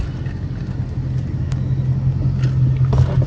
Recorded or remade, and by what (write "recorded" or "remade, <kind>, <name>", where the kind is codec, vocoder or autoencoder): recorded